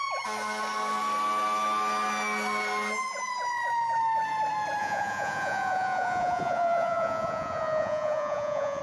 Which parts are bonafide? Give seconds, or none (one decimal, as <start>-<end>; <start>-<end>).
0.0-4.8